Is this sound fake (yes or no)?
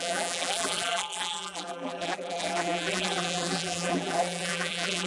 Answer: yes